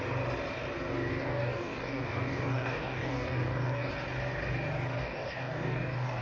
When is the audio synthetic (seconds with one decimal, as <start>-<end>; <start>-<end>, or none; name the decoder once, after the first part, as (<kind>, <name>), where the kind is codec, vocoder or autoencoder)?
1.1-3.9 (codec, DAC); 5.0-6.2